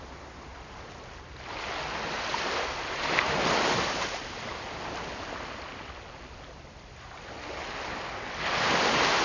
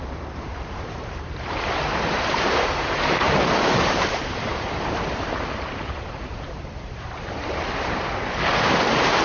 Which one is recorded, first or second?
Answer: first